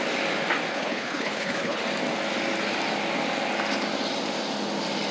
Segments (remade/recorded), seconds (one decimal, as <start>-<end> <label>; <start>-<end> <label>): 0.0-0.7 recorded; 0.7-1.8 remade; 1.8-5.1 recorded